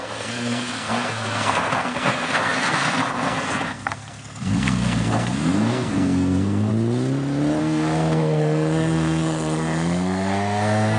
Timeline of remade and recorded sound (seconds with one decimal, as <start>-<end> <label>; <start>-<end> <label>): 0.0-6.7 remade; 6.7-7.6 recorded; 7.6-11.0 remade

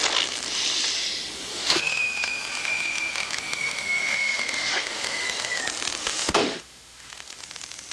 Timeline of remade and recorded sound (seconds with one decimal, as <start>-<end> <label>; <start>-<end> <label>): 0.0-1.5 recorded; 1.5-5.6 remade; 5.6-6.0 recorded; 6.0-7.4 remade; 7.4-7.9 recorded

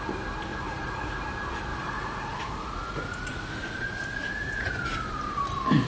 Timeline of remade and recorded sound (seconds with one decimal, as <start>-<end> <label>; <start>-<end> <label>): 0.0-0.5 recorded; 0.5-1.2 remade; 1.2-1.7 recorded; 1.7-4.7 remade; 4.7-5.9 recorded